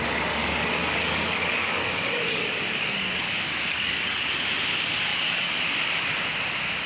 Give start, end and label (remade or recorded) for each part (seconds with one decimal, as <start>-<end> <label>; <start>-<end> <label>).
0.0-0.4 recorded; 0.4-4.5 remade; 4.5-5.1 recorded; 5.1-5.7 remade; 5.7-6.9 recorded